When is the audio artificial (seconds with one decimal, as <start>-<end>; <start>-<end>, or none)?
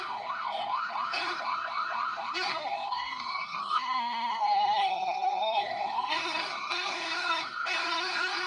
0.0-8.5